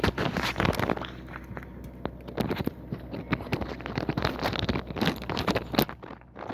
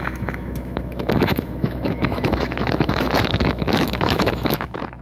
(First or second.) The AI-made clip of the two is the second